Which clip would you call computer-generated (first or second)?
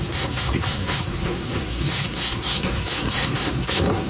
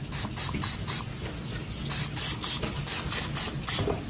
first